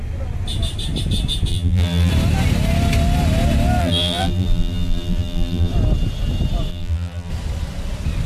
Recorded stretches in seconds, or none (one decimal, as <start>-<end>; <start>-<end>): 0.0-1.5; 2.1-3.8; 5.7-6.7; 7.3-8.3